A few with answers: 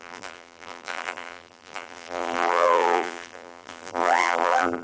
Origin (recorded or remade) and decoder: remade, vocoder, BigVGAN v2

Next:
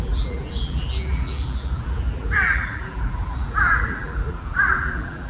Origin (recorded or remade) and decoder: remade, vocoder, BigVGAN v2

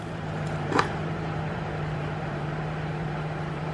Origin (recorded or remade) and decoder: remade, vocoder, BigVGAN v2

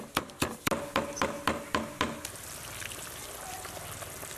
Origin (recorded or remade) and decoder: recorded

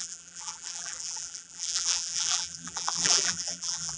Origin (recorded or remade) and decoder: remade, vocoder, BigVGAN v2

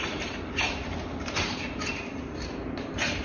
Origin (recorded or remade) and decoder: remade, vocoder, BigVGAN v2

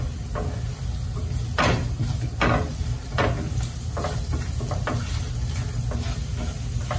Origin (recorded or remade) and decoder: recorded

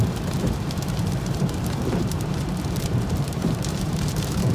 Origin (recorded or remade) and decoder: remade, vocoder, BigVGAN v2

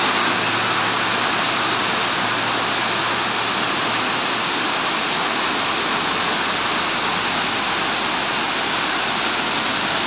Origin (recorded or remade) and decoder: recorded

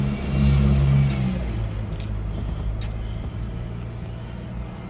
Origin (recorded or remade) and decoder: recorded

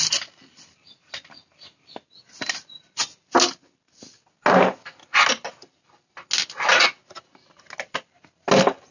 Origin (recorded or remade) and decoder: recorded